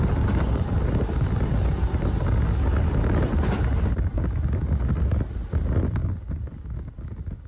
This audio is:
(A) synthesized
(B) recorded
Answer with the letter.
B